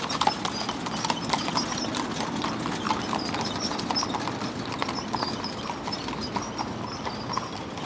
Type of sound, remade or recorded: recorded